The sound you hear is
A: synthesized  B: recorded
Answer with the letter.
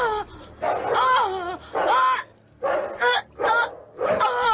B